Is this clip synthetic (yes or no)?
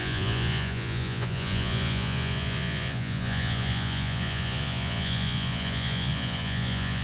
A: yes